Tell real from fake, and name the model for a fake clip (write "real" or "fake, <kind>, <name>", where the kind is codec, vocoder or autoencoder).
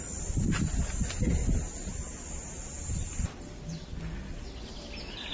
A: real